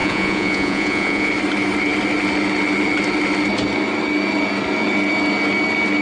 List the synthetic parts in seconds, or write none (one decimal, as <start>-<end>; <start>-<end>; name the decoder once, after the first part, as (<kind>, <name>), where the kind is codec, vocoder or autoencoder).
0.0-1.3 (vocoder, Vocos)